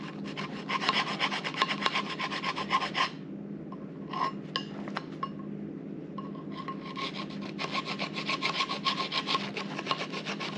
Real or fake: real